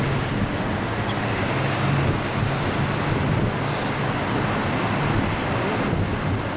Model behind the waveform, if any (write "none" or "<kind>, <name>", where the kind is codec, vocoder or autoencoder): none